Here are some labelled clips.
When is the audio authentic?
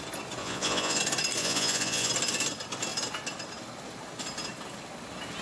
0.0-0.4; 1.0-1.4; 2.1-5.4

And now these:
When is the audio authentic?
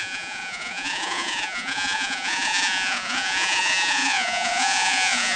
none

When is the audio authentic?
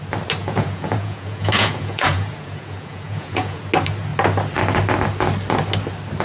0.0-0.4; 3.6-6.2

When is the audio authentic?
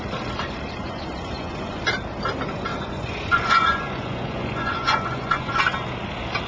0.0-0.8; 1.8-2.7; 5.6-6.5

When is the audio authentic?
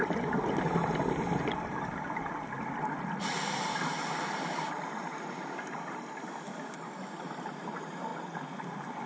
0.0-9.1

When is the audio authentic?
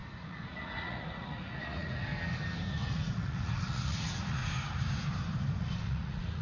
2.1-2.7; 4.4-5.6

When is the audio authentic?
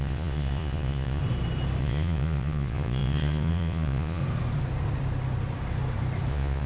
1.2-1.8; 4.2-6.3